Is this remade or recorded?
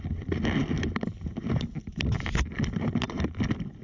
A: recorded